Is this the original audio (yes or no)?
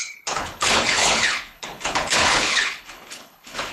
no